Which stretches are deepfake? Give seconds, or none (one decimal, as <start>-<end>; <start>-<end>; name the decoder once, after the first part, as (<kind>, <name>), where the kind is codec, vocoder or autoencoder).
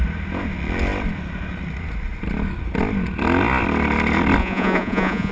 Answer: 4.4-5.3 (vocoder, Vocos)